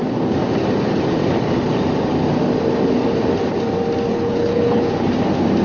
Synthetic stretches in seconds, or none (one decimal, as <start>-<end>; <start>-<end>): 4.1-4.9